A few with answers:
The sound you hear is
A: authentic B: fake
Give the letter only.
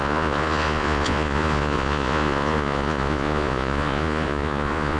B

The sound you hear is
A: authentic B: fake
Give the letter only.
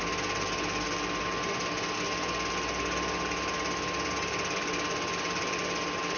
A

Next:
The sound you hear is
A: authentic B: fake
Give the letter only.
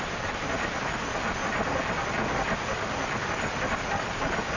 A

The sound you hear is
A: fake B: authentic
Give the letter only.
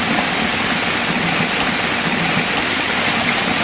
B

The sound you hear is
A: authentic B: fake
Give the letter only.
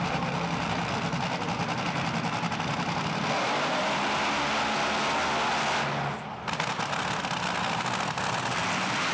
A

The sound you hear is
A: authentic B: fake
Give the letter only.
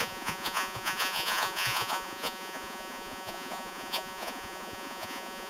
B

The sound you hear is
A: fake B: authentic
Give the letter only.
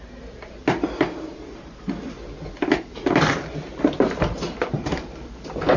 B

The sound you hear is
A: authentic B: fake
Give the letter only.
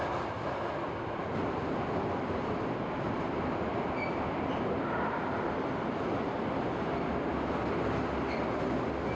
A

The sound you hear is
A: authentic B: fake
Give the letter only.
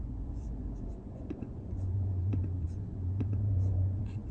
B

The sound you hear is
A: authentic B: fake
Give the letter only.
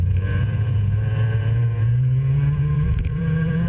B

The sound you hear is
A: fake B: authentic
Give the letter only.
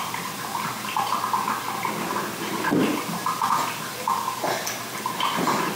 B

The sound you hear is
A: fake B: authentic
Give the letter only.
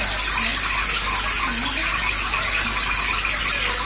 B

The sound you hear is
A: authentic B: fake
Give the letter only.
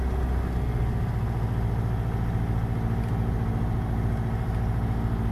A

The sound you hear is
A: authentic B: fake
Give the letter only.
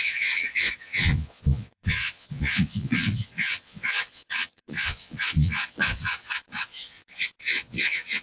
B